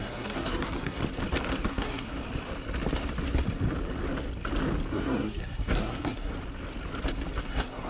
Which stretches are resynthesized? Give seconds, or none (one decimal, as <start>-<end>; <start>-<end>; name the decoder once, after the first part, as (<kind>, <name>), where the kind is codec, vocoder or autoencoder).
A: 0.0-1.0 (codec, SNAC); 1.7-2.2; 4.9-6.3; 7.4-7.9